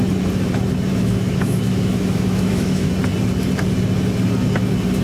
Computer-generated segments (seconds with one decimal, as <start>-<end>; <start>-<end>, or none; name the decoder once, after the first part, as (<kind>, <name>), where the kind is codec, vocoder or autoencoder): 0.9-2.9 (autoencoder, DAC-VAE)